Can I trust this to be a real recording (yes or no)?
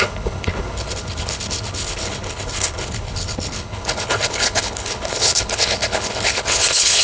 no